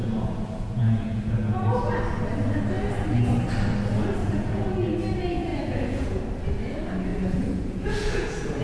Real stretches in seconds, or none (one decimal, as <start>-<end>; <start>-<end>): 2.0-4.2; 4.9-5.5; 6.2-7.1